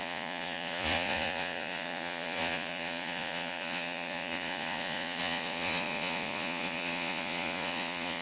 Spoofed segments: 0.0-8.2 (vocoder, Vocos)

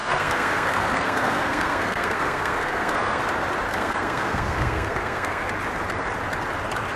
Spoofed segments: 0.0-3.2 (codec, SNAC); 3.7-5.5

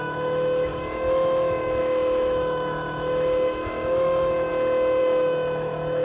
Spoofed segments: 0.0-4.5 (autoencoder, DAC-VAE); 5.0-6.0